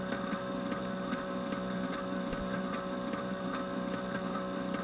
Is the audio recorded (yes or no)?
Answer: no